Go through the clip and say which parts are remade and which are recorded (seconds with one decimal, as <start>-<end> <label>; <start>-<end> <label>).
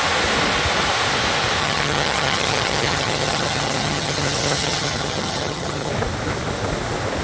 0.0-1.6 recorded; 1.6-5.9 remade; 5.9-7.2 recorded